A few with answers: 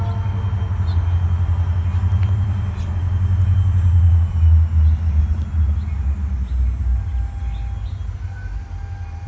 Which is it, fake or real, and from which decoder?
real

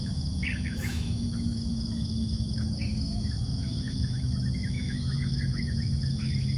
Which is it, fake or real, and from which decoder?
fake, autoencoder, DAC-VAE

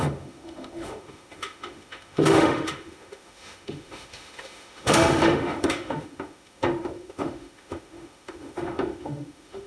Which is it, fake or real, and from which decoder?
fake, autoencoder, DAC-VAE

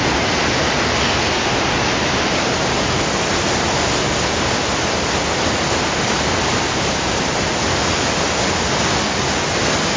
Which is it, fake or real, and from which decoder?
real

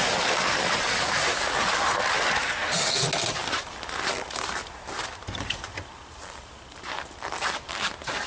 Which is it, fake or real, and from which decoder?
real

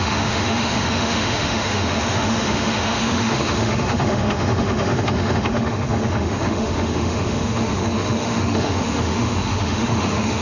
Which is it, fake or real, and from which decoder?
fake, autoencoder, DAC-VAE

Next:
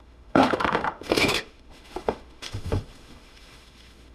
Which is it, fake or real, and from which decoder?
fake, autoencoder, DAC-VAE